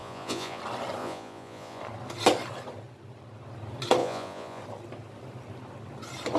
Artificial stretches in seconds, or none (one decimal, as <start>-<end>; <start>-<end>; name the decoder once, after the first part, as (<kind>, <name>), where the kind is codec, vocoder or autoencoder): 0.0-0.6 (vocoder, Vocos); 1.0-1.8; 4.0-4.6